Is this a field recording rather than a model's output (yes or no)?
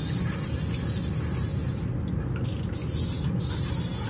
yes